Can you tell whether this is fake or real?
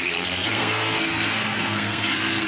fake